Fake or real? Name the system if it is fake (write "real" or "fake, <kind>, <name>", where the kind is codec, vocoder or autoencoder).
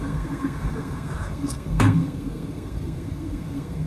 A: fake, codec, SNAC